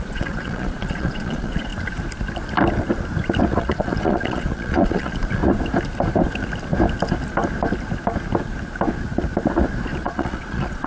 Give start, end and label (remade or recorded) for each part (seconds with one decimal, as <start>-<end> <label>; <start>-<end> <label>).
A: 0.0-1.7 remade; 1.7-3.5 recorded; 3.5-5.4 remade; 5.4-10.0 recorded; 10.0-10.9 remade